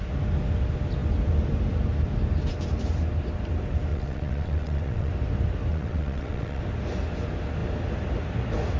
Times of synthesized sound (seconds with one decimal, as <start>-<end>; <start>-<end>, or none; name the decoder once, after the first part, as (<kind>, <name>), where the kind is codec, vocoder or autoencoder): 3.9-5.1 (vocoder, WaveNeXt); 5.7-6.6